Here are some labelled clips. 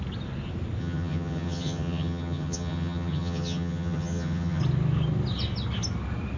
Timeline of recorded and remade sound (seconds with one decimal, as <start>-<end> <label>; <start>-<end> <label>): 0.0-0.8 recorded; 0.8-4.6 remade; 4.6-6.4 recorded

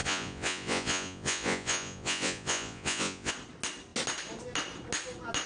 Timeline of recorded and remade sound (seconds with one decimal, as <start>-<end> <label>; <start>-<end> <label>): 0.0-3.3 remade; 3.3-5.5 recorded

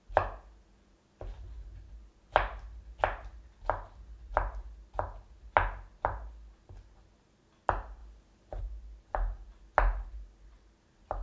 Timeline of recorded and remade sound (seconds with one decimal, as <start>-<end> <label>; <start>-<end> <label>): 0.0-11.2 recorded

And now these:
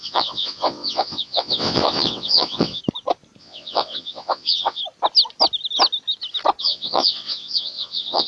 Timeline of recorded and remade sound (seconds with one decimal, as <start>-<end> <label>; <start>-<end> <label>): 0.0-2.8 remade; 2.8-3.4 recorded; 3.4-4.8 remade; 4.8-6.6 recorded; 6.6-8.3 remade

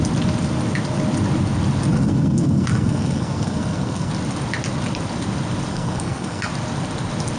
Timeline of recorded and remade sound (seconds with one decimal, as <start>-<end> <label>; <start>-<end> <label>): 0.0-1.9 recorded; 1.9-4.1 remade; 4.1-5.7 recorded; 5.7-6.5 remade; 6.5-7.4 recorded

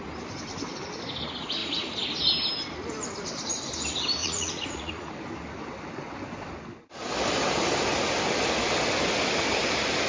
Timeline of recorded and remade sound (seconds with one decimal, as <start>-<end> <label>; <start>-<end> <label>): 0.0-4.2 recorded; 4.2-5.1 remade; 5.1-10.1 recorded